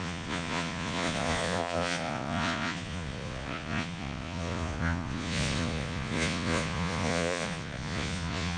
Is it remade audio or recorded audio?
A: remade